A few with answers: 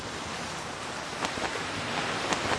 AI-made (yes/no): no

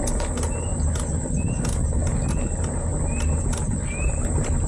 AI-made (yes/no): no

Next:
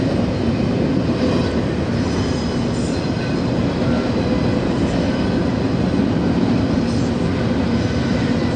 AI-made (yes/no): no